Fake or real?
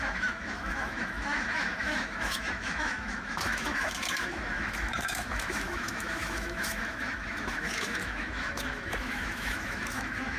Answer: fake